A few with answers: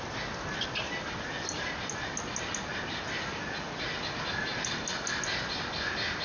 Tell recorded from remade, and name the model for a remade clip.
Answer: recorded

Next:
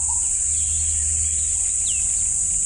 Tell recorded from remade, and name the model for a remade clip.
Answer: recorded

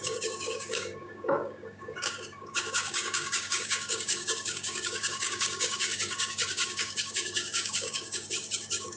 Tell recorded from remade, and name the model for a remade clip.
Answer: remade, codec, DAC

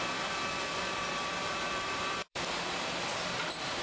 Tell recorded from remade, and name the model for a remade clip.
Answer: remade, vocoder, BigVGAN v2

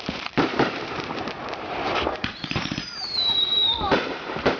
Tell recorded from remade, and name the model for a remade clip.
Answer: remade, vocoder, BigVGAN v2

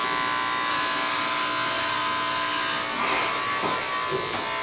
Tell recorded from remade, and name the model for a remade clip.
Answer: recorded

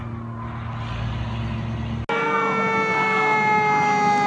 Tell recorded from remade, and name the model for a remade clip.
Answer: recorded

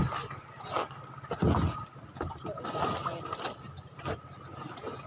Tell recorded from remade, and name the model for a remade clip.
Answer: recorded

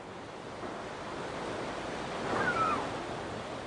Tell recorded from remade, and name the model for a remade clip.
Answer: recorded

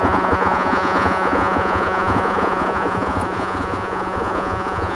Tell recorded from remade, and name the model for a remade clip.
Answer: remade, vocoder, Vocos